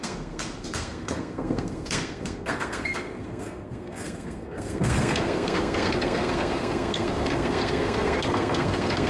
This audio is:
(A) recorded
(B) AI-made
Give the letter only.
B